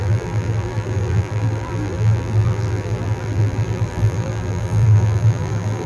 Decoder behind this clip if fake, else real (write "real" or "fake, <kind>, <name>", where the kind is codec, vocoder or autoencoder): fake, vocoder, BigVGAN v2